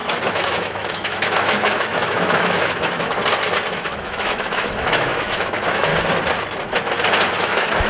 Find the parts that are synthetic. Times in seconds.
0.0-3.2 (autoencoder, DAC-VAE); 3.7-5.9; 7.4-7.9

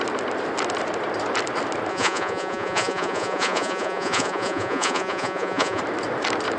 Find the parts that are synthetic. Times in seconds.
1.9-5.8 (vocoder, Vocos)

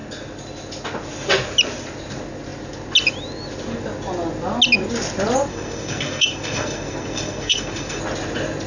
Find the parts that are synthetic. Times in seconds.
5.5-8.0 (codec, SNAC)

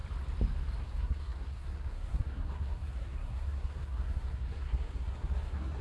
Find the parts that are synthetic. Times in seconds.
0.8-5.8 (codec, SNAC)